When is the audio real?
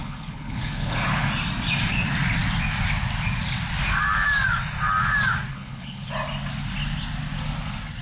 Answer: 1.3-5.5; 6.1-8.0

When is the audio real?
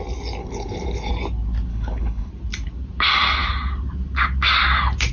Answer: 0.0-0.4; 1.1-1.7; 2.3-5.1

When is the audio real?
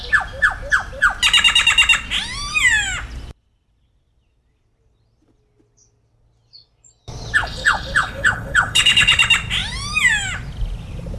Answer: 0.0-7.4; 9.2-11.2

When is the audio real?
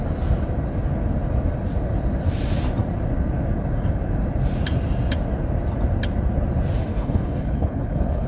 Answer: 0.0-6.9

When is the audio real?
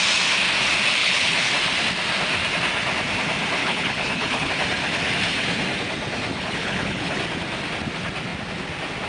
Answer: 0.0-1.0; 1.5-3.6; 4.5-6.3; 7.2-9.1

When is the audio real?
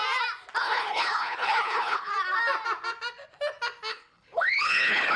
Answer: 0.0-0.6; 2.1-3.9